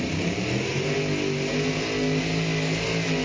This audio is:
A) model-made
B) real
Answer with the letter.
B